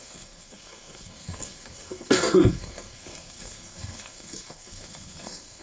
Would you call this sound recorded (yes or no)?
no